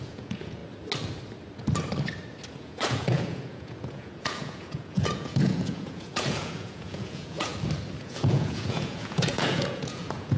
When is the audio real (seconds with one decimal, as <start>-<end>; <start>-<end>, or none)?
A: 0.6-2.5; 7.5-8.0